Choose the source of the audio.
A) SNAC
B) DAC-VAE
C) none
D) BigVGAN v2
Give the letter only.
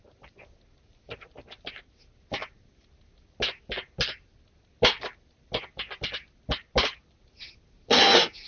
C